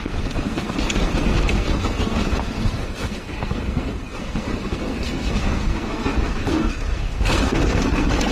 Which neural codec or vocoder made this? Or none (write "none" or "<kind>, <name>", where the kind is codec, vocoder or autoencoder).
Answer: codec, SNAC